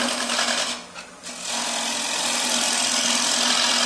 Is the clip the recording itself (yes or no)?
yes